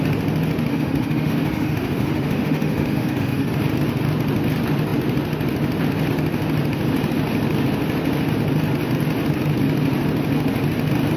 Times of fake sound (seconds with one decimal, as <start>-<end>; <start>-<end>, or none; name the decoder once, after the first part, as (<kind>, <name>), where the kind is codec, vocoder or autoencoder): 0.7-3.5 (autoencoder, DAC-VAE)